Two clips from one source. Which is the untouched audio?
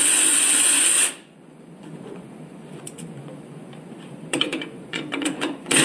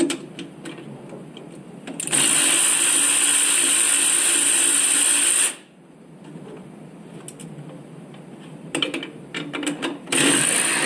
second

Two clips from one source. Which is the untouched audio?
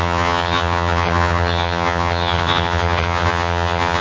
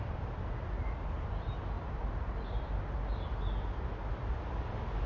second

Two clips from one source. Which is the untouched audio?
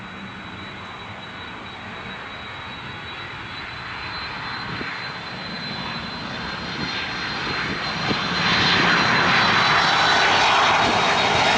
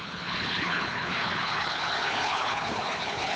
first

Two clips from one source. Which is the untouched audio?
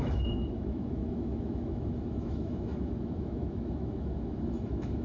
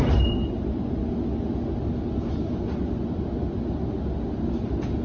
second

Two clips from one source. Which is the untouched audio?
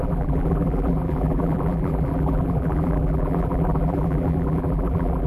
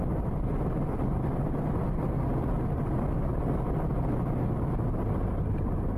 second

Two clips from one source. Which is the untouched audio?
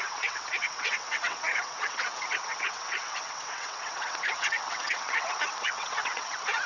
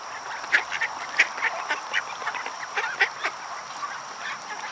second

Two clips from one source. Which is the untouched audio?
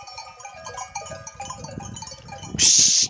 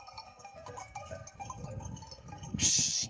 first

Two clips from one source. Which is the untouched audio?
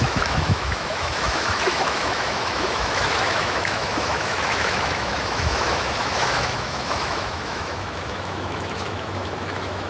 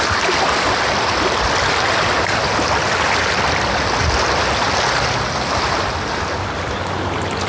second